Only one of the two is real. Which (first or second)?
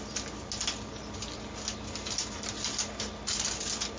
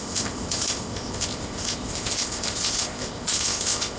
first